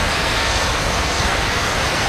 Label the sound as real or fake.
fake